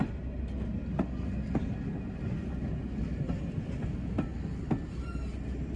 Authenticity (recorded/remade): recorded